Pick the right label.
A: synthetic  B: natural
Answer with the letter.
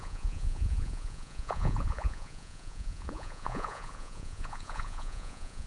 A